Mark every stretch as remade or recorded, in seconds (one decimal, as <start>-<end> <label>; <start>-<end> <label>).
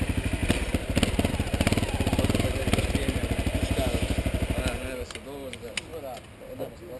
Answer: 0.0-7.0 recorded